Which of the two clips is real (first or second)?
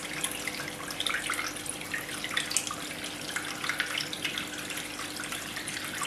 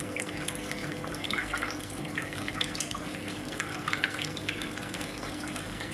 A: first